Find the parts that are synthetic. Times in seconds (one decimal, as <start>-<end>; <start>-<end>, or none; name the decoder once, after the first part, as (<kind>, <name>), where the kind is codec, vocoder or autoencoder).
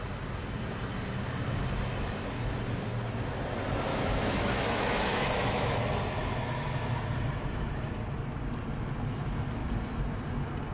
3.9-5.8 (autoencoder, DAC-VAE)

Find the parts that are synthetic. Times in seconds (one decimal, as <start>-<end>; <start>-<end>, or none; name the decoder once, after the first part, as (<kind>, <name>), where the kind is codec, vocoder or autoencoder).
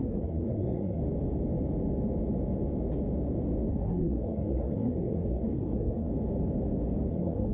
0.0-1.0 (codec, SNAC); 3.7-6.1; 7.1-7.5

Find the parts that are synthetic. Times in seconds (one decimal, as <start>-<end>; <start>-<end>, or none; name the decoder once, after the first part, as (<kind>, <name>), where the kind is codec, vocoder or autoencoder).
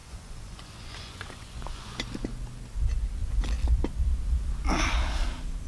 0.0-2.0 (vocoder, Vocos)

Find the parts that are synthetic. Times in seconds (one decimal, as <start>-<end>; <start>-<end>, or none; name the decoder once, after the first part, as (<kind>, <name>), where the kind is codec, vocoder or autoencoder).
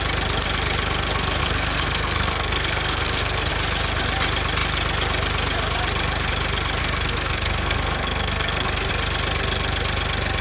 1.4-3.5 (codec, SNAC); 6.8-8.9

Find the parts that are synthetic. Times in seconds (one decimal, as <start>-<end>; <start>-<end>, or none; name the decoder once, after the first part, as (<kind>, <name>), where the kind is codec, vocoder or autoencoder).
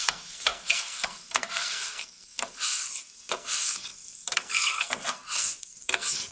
0.0-6.3 (codec, SNAC)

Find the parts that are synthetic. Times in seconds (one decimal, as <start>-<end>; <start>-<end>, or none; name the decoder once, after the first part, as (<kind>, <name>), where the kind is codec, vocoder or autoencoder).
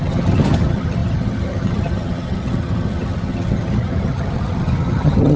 0.0-5.4 (vocoder, HiFi-GAN)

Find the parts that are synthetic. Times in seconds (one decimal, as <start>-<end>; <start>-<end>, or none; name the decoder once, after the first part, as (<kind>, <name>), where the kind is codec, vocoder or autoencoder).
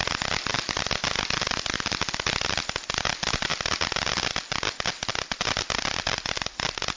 none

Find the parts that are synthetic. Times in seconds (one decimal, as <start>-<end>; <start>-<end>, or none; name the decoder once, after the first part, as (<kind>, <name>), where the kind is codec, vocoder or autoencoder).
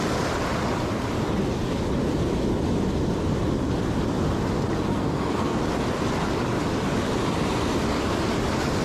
4.9-5.6 (codec, SNAC)